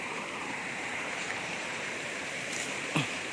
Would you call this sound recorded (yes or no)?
no